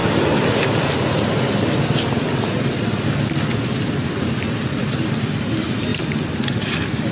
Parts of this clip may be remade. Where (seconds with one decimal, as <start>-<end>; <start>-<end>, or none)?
5.9-6.5